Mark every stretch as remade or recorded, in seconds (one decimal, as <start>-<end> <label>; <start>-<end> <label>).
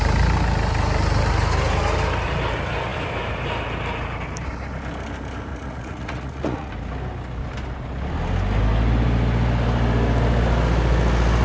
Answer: 0.0-5.5 recorded; 5.5-6.7 remade; 6.7-11.4 recorded